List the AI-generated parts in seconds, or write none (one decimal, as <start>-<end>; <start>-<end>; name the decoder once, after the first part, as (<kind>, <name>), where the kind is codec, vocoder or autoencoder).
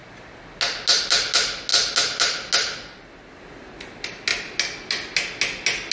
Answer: none